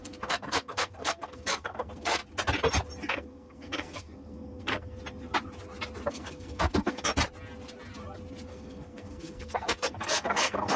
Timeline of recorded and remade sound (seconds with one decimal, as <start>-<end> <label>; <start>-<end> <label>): 0.0-2.2 remade; 2.2-3.1 recorded; 3.1-5.0 remade; 5.0-6.1 recorded; 6.1-7.1 remade; 7.1-8.5 recorded; 8.5-10.8 remade